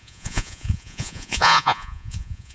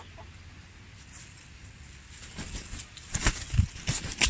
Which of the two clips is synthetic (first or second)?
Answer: first